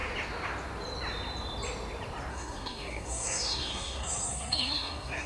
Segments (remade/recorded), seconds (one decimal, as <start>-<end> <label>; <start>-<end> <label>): 0.0-2.3 recorded; 2.3-5.3 remade